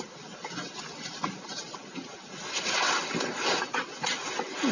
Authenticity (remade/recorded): recorded